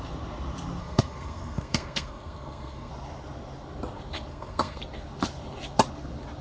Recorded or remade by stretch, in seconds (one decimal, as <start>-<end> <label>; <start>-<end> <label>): 0.0-0.8 recorded; 0.8-2.9 remade; 2.9-4.3 recorded; 4.3-4.8 remade; 4.8-6.4 recorded

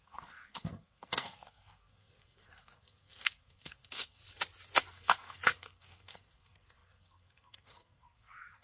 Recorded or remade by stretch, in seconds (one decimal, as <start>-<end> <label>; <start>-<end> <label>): 0.0-4.2 remade; 4.2-4.9 recorded; 4.9-8.6 remade

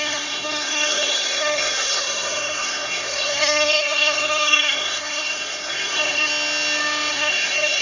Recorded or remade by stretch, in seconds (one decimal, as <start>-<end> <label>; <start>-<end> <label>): 0.0-6.3 remade; 6.3-7.1 recorded; 7.1-7.8 remade

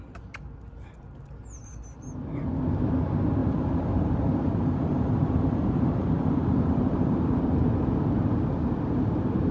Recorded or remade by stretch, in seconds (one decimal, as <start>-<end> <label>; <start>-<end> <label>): 0.0-3.4 recorded; 3.4-7.4 remade; 7.4-9.5 recorded

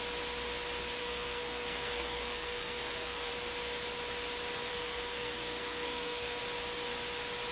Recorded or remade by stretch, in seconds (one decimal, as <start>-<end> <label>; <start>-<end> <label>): 0.0-1.0 recorded; 1.0-3.3 remade; 3.3-4.7 recorded; 4.7-6.4 remade; 6.4-7.5 recorded